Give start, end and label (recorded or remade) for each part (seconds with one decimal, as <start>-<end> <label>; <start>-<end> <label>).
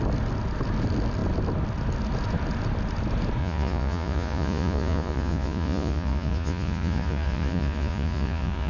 0.0-3.4 recorded; 3.4-8.7 remade